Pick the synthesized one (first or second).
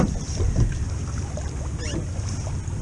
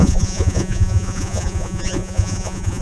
second